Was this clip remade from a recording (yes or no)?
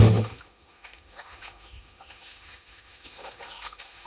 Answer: yes